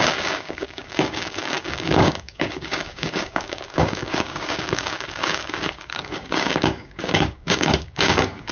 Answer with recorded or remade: remade